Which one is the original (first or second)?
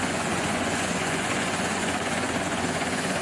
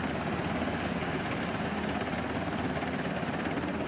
second